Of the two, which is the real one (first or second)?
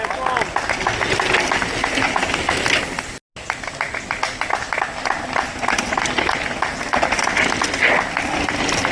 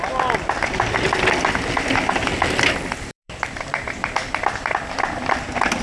first